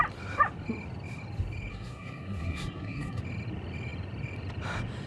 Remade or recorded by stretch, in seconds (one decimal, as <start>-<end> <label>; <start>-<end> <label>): 0.0-1.7 recorded; 1.7-3.2 remade; 3.2-5.1 recorded